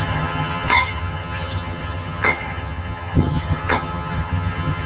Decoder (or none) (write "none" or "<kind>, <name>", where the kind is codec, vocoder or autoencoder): vocoder, HiFi-GAN